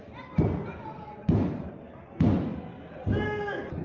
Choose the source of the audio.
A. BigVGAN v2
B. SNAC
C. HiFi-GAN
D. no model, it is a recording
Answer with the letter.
D